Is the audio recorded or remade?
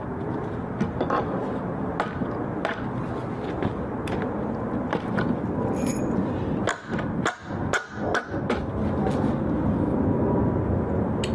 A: recorded